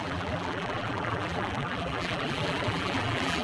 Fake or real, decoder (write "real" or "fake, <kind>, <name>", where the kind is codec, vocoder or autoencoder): fake, vocoder, BigVGAN v2